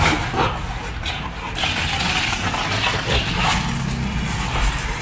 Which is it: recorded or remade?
recorded